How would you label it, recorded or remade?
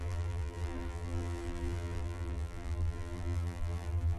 remade